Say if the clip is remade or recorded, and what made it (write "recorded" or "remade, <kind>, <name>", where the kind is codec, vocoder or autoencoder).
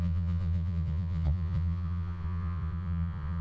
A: remade, vocoder, Vocos